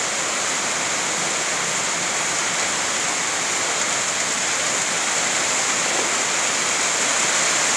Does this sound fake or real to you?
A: real